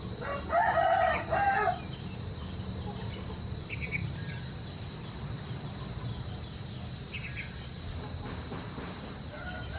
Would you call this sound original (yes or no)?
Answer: yes